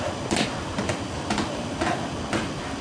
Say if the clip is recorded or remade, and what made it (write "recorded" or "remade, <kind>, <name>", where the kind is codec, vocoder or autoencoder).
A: recorded